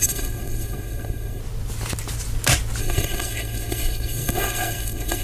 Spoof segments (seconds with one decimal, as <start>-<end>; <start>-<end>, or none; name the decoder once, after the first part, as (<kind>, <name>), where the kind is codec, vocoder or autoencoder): 0.0-1.4 (codec, SNAC); 2.8-5.2